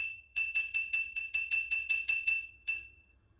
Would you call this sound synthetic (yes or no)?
yes